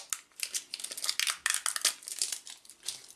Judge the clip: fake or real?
real